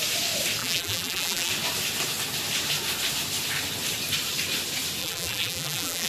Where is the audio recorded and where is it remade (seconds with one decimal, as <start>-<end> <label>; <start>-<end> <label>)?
0.0-0.6 recorded; 0.6-1.5 remade; 1.5-5.0 recorded; 5.0-6.1 remade